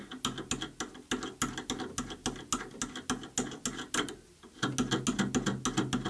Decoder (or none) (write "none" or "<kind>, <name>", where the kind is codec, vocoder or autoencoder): none